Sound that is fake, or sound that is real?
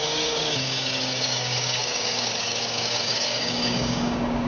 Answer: fake